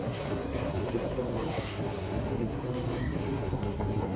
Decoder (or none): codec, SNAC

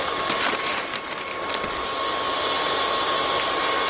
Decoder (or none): none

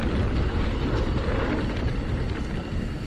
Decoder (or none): none